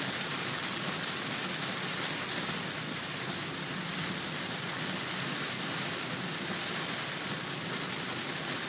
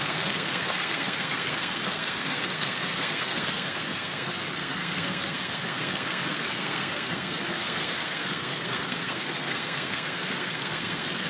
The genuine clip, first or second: first